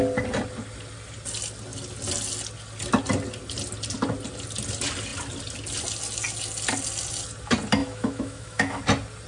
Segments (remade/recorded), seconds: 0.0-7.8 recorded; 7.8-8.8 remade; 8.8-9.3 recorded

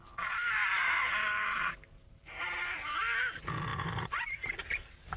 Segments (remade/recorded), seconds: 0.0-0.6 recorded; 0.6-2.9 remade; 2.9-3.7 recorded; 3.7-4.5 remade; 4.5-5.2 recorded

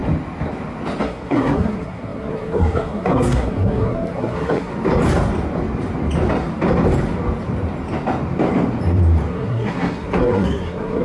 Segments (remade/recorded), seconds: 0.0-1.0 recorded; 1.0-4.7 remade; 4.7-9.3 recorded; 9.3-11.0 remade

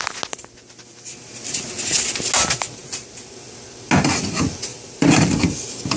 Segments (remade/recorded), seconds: 0.0-4.7 recorded; 4.7-5.4 remade; 5.4-6.0 recorded

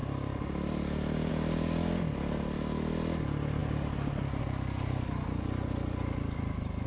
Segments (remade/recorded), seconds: 0.0-6.9 recorded